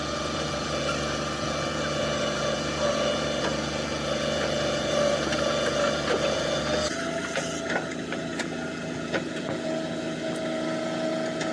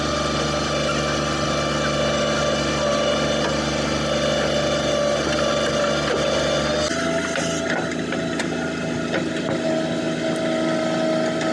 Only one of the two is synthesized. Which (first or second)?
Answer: first